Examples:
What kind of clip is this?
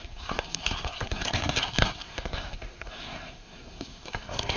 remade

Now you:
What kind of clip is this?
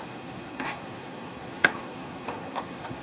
remade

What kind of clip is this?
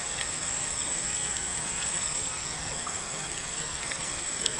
remade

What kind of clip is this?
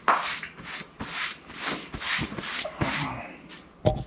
recorded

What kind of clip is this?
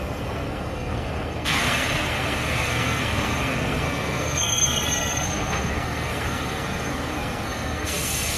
remade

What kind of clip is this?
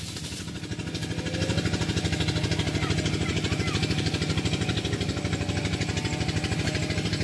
recorded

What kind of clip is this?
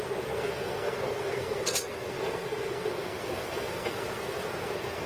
remade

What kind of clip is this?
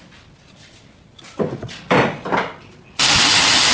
recorded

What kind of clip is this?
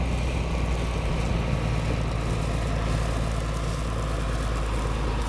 recorded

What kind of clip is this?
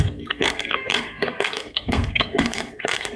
remade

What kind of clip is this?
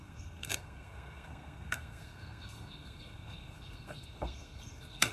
remade